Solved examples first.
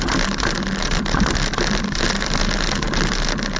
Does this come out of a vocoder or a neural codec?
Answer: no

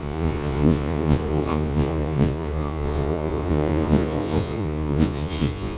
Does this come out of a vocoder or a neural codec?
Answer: yes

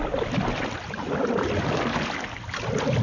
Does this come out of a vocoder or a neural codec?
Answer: no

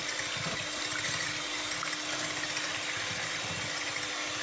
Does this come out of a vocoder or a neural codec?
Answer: no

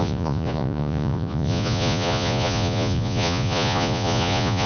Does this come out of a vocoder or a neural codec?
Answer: yes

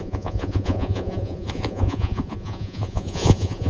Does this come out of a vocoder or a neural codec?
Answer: yes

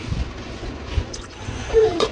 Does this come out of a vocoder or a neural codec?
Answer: yes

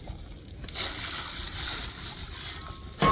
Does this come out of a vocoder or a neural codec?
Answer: no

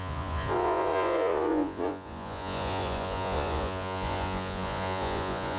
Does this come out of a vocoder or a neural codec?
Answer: yes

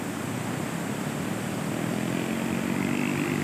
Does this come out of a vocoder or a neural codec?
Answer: no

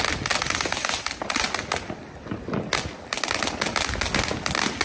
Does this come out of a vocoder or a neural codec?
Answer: no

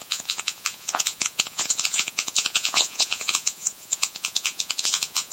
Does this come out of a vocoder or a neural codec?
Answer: yes